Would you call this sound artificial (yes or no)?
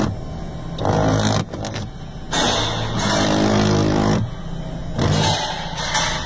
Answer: no